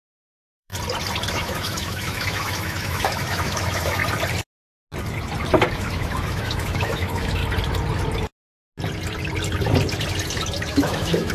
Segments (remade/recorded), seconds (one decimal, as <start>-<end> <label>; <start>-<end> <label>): 0.0-0.7 remade; 0.7-1.3 recorded; 1.3-4.0 remade; 4.0-5.7 recorded; 5.7-7.4 remade; 7.4-10.7 recorded; 10.7-11.3 remade